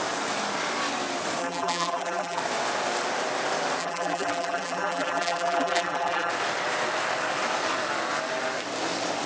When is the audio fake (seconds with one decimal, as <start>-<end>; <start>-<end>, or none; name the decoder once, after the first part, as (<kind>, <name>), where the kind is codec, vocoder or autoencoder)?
1.4-2.4 (vocoder, BigVGAN v2); 3.8-6.3